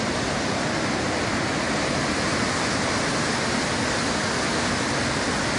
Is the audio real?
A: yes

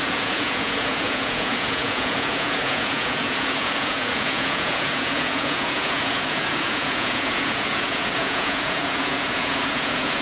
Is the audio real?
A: no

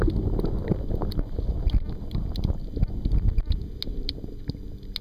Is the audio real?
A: yes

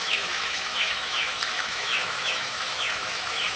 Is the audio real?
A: no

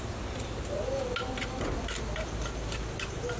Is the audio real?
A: yes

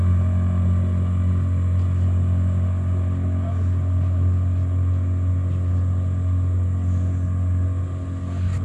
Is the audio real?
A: yes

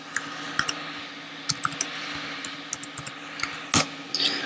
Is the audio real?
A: yes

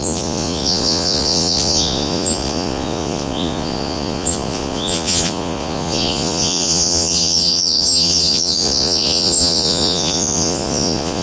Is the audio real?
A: no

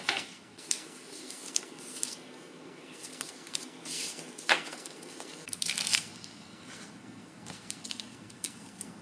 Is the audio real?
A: no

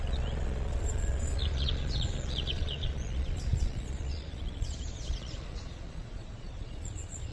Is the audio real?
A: no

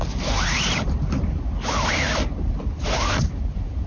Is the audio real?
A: yes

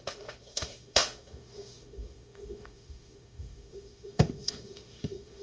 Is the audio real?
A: no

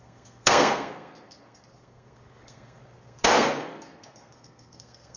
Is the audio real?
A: no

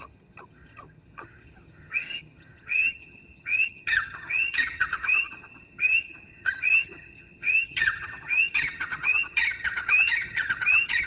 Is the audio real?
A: no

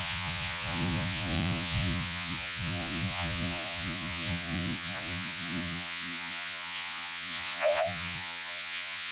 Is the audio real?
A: no